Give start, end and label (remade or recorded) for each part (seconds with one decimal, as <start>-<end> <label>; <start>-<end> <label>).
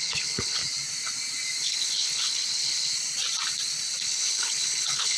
0.0-0.6 remade; 0.6-1.6 recorded; 1.6-2.9 remade; 2.9-4.0 recorded; 4.0-5.2 remade